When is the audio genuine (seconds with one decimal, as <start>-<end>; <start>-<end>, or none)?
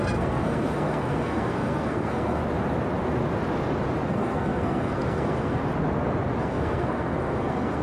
2.4-4.1; 5.6-6.4